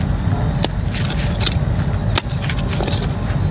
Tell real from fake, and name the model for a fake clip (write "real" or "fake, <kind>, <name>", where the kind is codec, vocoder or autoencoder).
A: real